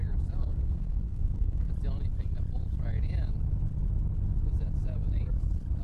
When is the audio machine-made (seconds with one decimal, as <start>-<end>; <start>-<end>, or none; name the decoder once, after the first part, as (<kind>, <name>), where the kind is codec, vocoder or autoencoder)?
0.4-1.7 (codec, SNAC)